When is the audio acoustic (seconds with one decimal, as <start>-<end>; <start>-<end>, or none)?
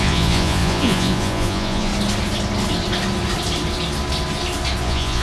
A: 1.9-4.8